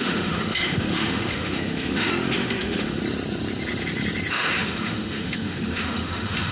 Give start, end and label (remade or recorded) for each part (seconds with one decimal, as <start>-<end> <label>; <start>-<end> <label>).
0.0-3.0 remade; 3.0-4.3 recorded; 4.3-6.5 remade